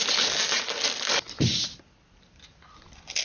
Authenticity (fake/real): real